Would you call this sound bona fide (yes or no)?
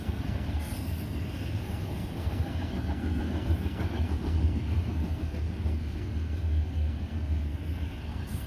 no